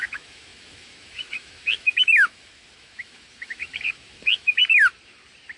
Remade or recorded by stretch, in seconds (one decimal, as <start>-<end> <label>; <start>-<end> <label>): 0.0-4.6 remade; 4.6-5.6 recorded